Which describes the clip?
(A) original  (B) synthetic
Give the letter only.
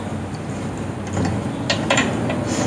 A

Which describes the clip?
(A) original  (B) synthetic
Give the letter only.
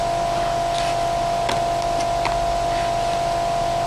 A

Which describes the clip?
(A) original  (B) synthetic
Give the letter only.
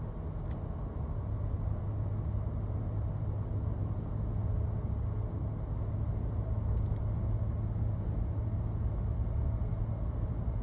A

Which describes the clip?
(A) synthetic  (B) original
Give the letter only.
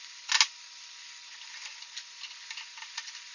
B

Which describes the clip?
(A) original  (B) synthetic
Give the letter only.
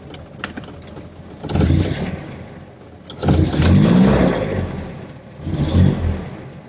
A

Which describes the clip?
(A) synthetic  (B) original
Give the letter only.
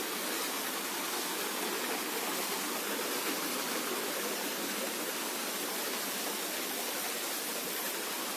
B